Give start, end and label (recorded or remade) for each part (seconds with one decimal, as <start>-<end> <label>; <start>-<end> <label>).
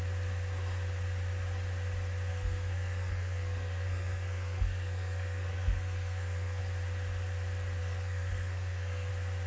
0.0-2.3 recorded; 2.3-6.6 remade; 6.6-7.8 recorded; 7.8-9.1 remade; 9.1-9.5 recorded